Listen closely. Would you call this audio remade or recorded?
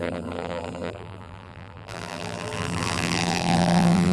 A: remade